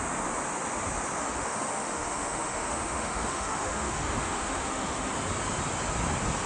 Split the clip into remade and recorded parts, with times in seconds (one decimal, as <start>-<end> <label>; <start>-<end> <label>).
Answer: 0.0-1.2 recorded; 1.2-5.1 remade; 5.1-6.5 recorded